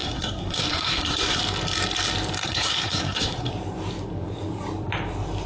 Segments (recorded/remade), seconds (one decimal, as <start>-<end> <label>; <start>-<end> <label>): 0.0-1.4 remade; 1.4-2.4 recorded; 2.4-3.5 remade; 3.5-5.5 recorded